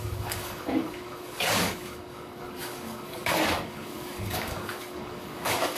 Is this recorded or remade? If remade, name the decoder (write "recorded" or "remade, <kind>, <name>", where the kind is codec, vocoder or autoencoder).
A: remade, codec, DAC